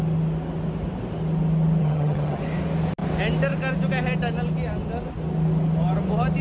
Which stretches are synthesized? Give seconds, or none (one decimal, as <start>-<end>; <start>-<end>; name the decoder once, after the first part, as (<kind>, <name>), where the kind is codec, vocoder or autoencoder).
1.8-2.4 (vocoder, HiFi-GAN)